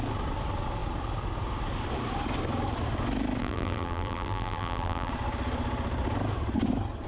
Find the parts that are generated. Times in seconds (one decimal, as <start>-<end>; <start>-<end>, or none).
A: 3.4-5.1